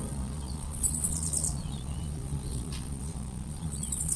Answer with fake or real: fake